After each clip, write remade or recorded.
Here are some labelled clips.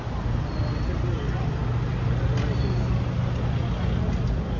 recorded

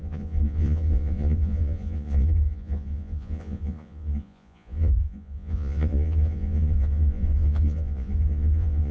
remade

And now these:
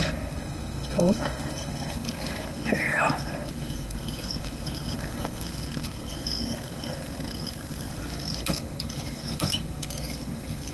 remade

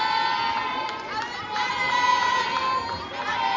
recorded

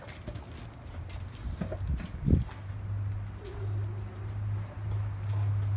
recorded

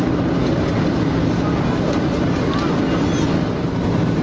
recorded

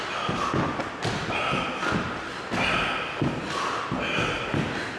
recorded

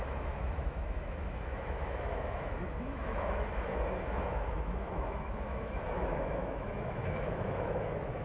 remade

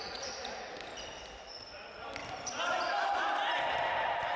remade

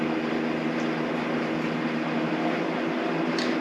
recorded